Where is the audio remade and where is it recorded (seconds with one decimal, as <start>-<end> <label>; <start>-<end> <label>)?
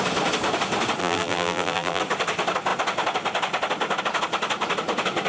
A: 0.0-1.0 recorded; 1.0-2.0 remade; 2.0-5.3 recorded